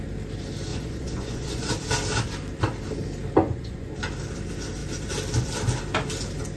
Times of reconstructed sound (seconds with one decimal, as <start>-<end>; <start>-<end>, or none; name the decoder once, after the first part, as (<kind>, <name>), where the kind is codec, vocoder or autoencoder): 0.7-1.7 (vocoder, Vocos); 3.4-4.0